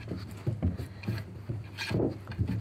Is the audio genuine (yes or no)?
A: yes